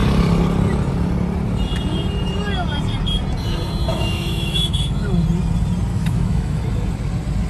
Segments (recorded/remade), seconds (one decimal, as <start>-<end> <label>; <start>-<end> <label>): 0.0-3.9 recorded; 3.9-5.1 remade; 5.1-5.9 recorded; 5.9-6.6 remade; 6.6-7.5 recorded